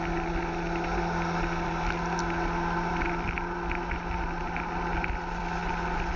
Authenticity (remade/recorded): recorded